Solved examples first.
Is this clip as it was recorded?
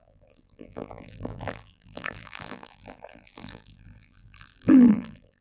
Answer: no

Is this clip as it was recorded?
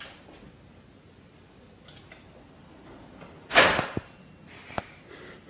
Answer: yes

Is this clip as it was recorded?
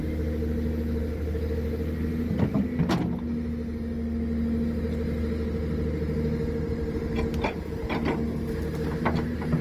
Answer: yes